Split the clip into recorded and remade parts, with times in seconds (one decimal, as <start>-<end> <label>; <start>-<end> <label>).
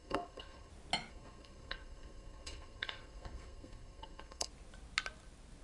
0.0-0.7 remade; 0.7-1.1 recorded; 1.1-4.5 remade; 4.5-5.6 recorded